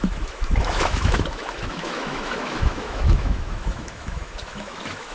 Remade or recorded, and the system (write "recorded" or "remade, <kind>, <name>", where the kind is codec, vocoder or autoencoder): remade, autoencoder, DAC-VAE